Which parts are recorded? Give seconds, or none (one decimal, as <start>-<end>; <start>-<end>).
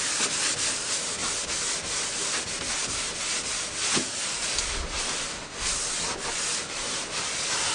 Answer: 0.0-7.7